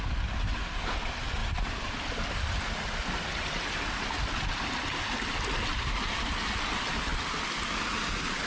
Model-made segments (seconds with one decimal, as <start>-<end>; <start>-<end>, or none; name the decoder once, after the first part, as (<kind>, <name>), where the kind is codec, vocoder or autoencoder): none